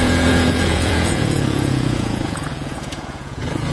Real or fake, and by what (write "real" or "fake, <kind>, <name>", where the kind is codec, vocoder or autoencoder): fake, vocoder, Vocos